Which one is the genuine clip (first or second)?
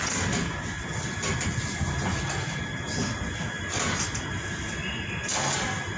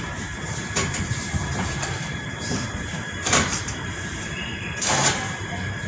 first